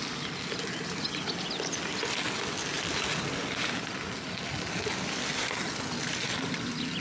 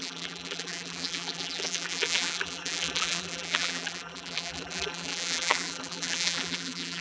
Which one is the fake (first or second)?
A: second